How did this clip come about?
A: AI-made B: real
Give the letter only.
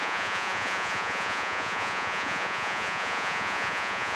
A